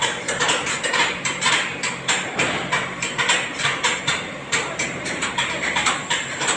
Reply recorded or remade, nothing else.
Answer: remade